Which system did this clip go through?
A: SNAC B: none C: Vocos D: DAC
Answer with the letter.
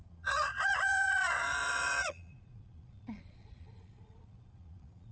C